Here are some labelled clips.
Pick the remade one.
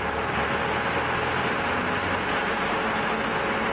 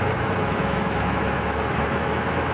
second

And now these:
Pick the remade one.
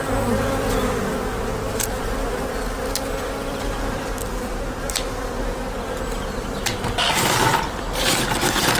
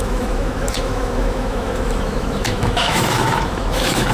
second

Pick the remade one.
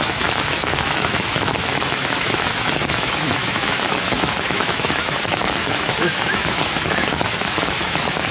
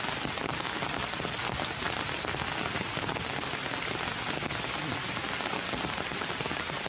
first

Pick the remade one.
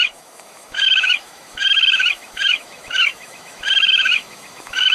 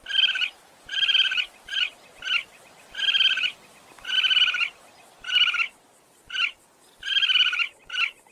first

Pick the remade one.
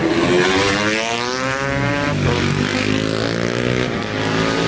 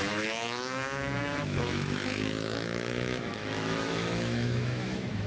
second